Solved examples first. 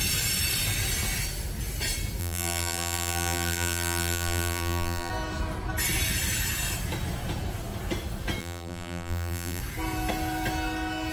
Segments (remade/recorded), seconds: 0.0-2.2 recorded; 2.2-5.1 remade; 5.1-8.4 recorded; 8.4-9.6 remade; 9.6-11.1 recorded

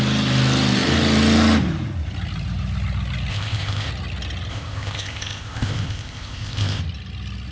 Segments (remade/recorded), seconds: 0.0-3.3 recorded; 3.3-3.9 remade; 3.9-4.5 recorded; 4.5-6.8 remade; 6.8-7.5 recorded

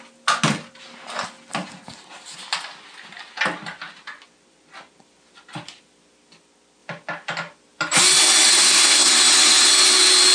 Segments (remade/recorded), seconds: 0.0-8.5 recorded; 8.5-9.1 remade; 9.1-10.3 recorded